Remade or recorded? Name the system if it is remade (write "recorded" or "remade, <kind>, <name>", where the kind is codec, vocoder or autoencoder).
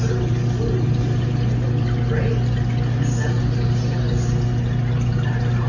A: recorded